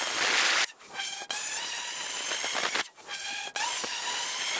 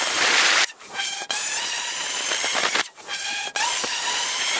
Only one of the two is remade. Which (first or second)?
second